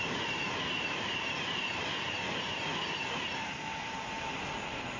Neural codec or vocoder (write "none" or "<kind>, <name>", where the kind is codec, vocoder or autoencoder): vocoder, BigVGAN v2